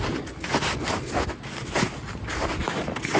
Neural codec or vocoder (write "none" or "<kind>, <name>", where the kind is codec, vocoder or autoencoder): none